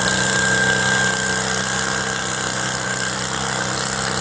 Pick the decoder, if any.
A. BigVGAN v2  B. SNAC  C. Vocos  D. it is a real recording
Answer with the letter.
D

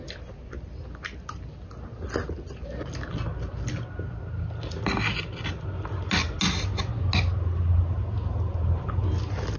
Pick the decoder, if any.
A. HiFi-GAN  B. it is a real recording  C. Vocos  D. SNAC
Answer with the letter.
B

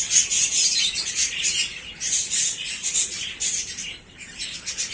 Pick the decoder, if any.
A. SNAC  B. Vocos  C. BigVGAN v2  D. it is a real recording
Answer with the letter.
C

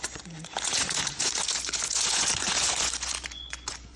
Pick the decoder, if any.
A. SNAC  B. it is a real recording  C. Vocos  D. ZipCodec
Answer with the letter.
C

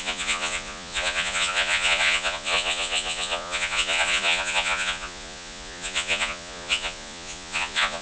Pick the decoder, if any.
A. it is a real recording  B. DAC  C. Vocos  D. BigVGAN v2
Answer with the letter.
C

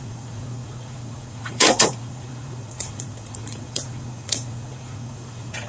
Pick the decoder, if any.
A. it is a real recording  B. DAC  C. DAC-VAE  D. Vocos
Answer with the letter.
D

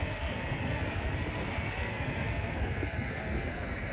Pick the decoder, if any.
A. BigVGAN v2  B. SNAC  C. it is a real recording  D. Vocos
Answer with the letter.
B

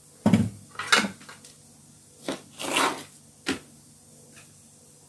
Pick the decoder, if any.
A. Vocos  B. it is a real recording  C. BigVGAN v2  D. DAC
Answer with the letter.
B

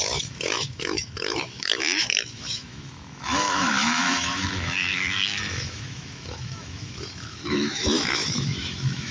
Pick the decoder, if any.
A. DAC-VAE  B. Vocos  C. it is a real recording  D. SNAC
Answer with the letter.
A